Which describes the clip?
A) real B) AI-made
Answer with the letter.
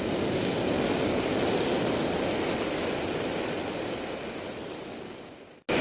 A